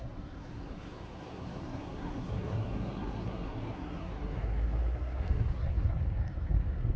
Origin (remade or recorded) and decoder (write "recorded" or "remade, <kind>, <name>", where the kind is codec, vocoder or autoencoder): remade, codec, SNAC